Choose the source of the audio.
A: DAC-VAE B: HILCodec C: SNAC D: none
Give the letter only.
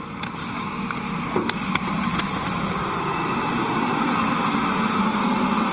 D